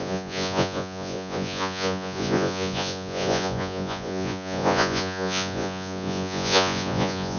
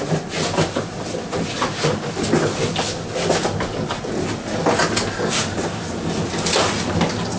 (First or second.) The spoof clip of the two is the first